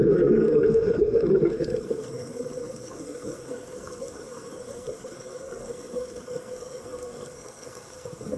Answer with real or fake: fake